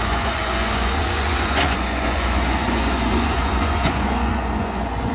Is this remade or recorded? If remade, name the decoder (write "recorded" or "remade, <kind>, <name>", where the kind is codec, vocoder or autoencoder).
remade, vocoder, Vocos